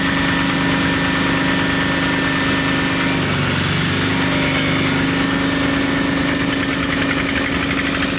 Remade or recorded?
recorded